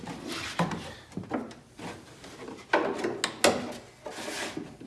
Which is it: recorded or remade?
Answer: recorded